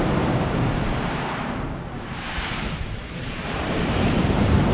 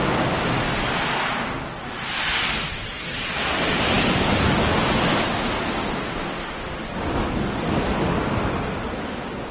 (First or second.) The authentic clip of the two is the second